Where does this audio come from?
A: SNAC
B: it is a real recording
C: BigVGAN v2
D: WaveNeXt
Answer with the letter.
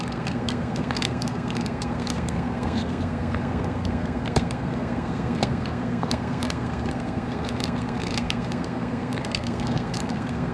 A